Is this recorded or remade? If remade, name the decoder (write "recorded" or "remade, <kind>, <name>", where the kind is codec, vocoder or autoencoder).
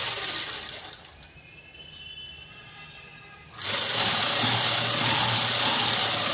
recorded